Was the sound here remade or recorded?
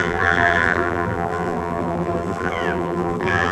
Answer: remade